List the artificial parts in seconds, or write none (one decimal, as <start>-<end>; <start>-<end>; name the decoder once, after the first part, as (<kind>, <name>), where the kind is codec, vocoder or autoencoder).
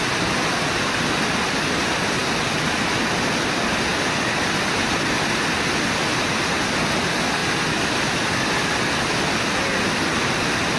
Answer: none